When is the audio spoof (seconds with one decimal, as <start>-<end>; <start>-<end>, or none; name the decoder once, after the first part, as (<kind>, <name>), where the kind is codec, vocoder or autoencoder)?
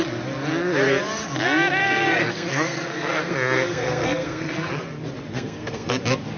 1.8-4.7 (codec, SNAC); 5.3-6.0